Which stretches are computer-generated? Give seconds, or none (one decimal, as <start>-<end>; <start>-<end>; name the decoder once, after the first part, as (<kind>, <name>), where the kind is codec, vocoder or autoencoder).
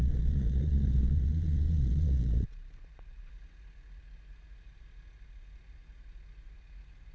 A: 0.0-3.3 (vocoder, Vocos)